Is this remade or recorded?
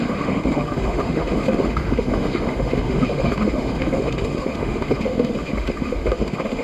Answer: remade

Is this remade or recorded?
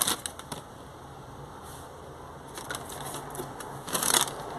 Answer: recorded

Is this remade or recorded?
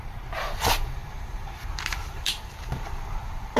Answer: remade